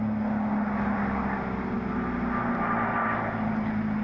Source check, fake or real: real